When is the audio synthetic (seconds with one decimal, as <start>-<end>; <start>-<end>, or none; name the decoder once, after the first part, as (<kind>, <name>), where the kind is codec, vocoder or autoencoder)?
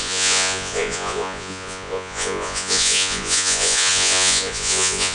0.0-5.1 (vocoder, Vocos)